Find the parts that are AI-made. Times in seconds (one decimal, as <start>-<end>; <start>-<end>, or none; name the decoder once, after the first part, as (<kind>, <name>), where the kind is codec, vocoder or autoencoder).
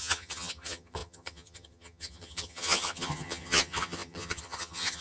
0.0-5.0 (vocoder, HiFi-GAN)